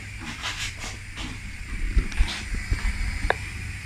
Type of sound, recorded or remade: remade